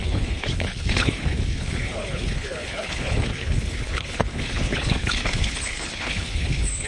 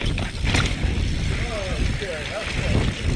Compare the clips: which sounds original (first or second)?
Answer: second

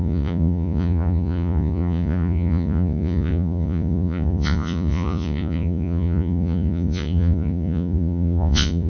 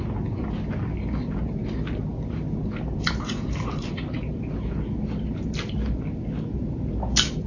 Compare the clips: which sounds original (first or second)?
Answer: second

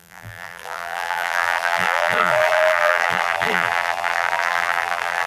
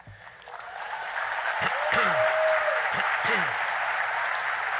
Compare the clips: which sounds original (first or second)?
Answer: second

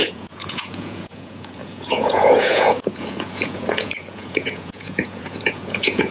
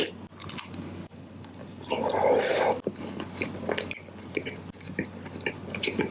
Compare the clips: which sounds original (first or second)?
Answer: second